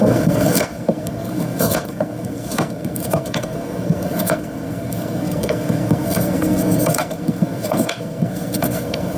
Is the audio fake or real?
fake